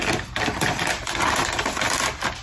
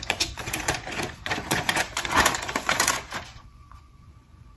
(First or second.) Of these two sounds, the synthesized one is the second